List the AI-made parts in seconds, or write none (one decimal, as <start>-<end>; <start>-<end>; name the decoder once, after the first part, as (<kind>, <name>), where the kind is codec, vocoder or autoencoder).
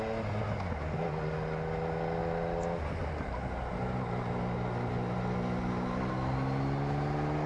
none